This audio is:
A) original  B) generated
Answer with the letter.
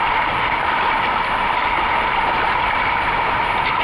A